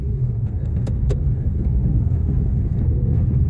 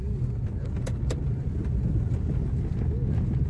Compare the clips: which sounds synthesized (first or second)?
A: first